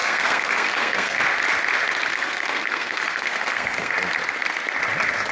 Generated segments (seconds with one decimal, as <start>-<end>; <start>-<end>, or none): 0.0-1.2; 2.1-3.9